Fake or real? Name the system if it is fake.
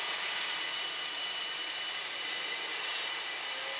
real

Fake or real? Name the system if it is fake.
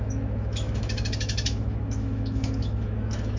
fake, autoencoder, DAC-VAE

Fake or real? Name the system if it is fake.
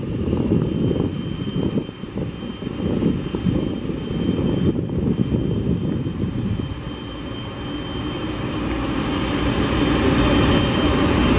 real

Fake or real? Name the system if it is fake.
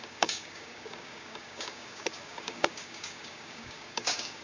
fake, codec, DAC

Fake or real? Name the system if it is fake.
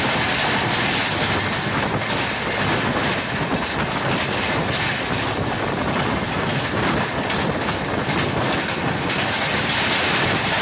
real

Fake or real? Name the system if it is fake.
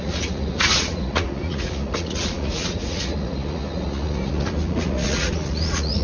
fake, vocoder, Vocos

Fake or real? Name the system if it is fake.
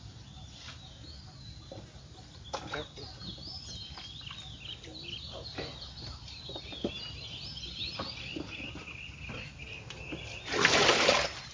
real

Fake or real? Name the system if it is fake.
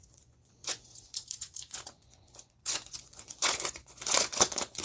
fake, vocoder, Vocos